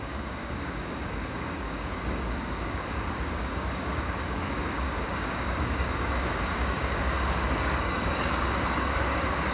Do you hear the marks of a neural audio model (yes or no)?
yes